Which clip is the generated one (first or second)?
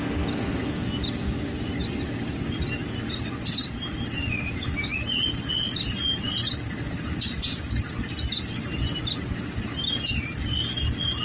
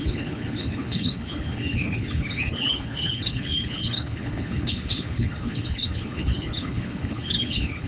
second